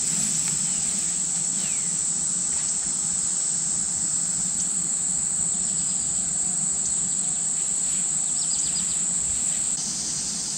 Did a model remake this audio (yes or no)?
no